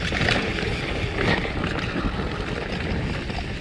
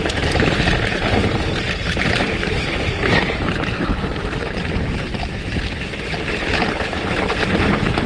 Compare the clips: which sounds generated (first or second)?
second